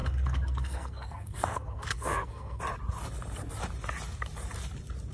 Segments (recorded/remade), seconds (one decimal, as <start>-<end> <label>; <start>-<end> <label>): 0.0-2.6 remade; 2.6-5.1 recorded